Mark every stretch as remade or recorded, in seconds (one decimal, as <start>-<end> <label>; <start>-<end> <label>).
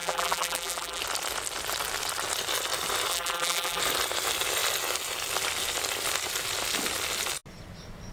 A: 0.0-1.0 remade; 1.0-3.1 recorded; 3.1-3.8 remade; 3.8-8.1 recorded